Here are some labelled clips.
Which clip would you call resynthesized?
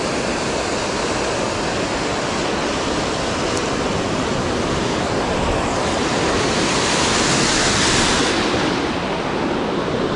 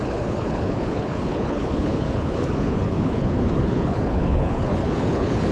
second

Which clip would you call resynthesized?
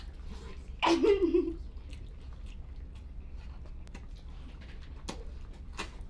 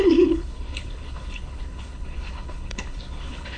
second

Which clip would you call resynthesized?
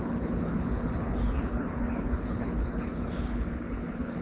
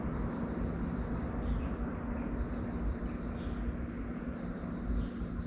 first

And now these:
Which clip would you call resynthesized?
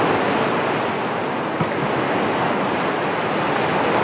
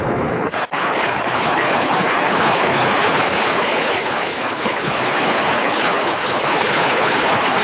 second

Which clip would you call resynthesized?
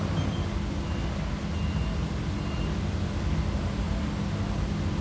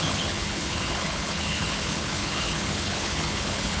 second